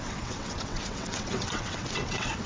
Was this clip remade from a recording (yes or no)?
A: yes